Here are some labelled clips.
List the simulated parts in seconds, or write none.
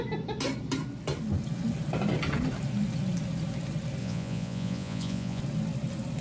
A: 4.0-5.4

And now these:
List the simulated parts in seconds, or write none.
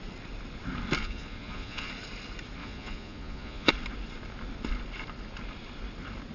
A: 1.0-1.9; 2.6-3.7